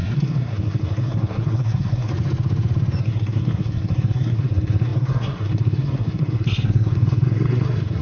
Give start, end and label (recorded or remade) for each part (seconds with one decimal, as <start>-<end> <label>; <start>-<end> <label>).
0.0-2.1 remade; 2.1-3.0 recorded; 3.0-8.0 remade